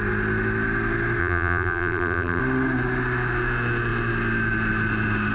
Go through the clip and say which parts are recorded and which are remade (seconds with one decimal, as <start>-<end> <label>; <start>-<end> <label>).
0.0-1.2 recorded; 1.2-2.4 remade; 2.4-5.3 recorded